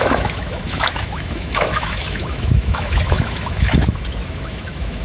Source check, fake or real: fake